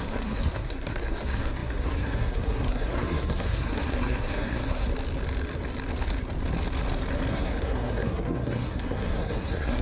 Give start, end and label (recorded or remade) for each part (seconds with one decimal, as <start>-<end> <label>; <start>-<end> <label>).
0.0-4.9 remade; 4.9-7.3 recorded; 7.3-9.8 remade